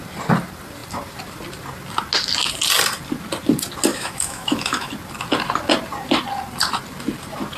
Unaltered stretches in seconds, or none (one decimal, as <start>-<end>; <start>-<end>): 0.0-3.9; 4.9-7.6